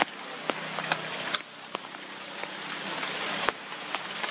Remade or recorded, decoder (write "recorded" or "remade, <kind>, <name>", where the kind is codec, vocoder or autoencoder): recorded